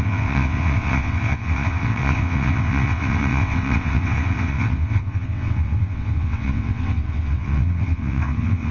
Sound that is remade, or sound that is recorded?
remade